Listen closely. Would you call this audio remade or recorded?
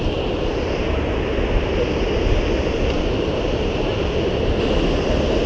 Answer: recorded